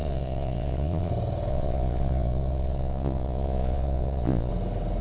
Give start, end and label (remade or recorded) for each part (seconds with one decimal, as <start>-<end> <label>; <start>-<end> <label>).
0.0-1.1 remade; 1.1-1.5 recorded; 1.5-4.5 remade; 4.5-5.0 recorded